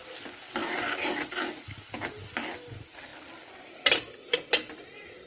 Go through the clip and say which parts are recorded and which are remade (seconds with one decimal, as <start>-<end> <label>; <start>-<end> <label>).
0.0-5.3 recorded